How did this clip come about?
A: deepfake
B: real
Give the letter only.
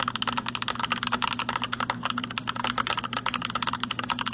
B